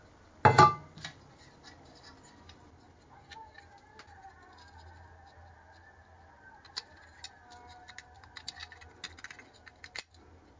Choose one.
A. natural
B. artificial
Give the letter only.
A